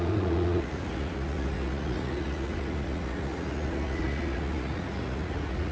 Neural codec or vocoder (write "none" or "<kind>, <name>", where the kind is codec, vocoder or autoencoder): vocoder, Vocos